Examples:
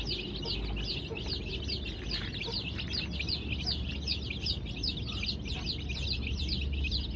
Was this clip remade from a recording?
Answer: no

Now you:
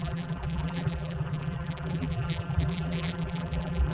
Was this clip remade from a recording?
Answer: yes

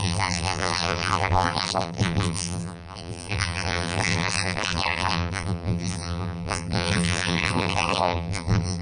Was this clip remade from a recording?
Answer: yes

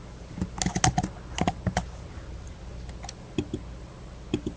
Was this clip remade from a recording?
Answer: no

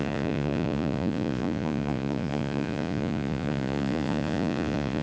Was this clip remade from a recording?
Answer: yes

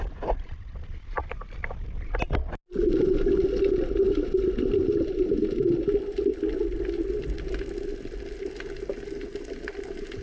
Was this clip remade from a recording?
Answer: no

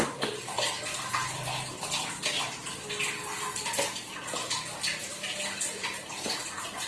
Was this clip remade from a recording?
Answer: no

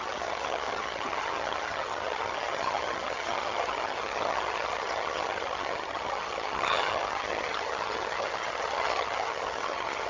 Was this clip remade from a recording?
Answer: yes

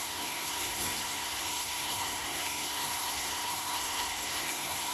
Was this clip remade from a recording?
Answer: yes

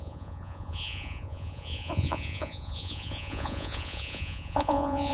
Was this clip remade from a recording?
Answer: yes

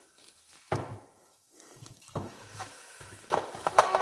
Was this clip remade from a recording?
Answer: yes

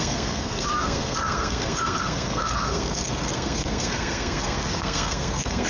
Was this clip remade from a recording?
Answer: yes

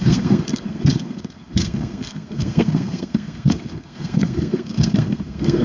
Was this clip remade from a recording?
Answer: yes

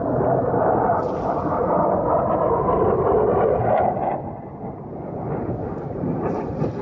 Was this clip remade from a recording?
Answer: no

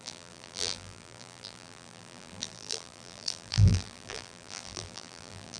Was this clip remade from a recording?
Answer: yes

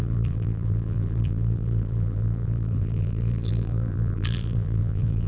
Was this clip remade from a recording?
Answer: yes